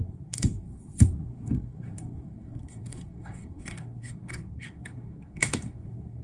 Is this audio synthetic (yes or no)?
yes